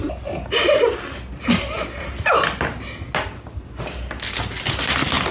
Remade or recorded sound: recorded